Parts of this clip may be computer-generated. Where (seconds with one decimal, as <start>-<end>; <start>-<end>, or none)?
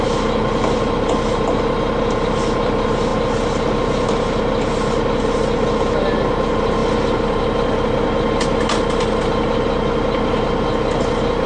none